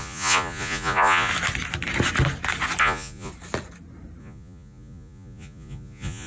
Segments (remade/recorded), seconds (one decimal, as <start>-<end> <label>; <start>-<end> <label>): 0.0-1.3 remade; 1.3-2.8 recorded; 2.8-3.3 remade; 3.3-4.2 recorded; 4.2-6.3 remade